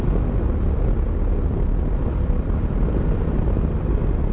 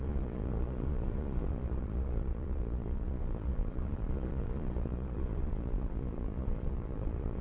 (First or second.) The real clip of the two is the first